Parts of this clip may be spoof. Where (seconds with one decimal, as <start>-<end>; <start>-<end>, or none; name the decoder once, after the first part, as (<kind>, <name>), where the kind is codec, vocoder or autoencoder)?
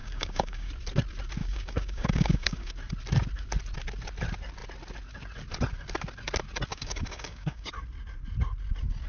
0.0-0.7 (codec, DAC); 1.4-2.7; 6.7-7.7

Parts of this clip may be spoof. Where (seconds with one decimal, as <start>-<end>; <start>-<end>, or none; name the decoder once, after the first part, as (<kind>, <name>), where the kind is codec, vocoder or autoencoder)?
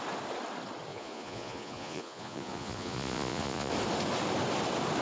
0.9-3.7 (vocoder, Vocos)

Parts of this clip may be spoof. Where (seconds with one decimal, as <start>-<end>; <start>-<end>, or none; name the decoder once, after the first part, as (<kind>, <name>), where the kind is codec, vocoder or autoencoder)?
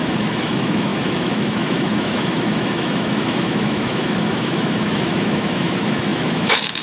0.0-6.8 (autoencoder, DAC-VAE)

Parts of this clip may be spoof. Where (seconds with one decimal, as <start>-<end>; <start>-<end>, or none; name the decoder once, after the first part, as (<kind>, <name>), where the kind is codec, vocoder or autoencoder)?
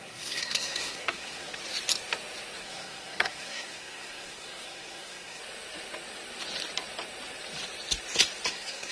0.0-1.6 (codec, SNAC); 2.6-5.4; 8.5-8.9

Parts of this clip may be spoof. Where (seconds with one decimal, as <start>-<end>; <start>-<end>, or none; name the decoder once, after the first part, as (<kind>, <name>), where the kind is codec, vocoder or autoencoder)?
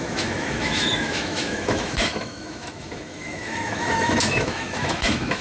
0.0-5.4 (autoencoder, DAC-VAE)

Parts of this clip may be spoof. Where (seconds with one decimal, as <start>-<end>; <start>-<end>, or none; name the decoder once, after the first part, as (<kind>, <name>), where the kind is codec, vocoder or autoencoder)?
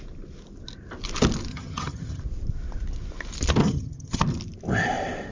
1.5-2.2 (vocoder, HiFi-GAN); 3.6-4.2